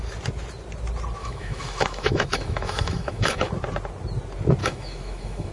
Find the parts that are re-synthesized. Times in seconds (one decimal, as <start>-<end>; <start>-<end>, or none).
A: 1.2-3.5; 4.6-5.5